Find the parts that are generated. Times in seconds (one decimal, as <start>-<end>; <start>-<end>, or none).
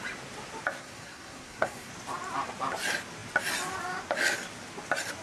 0.8-1.9